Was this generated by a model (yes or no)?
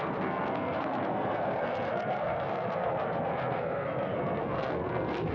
yes